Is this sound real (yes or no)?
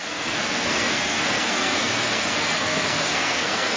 no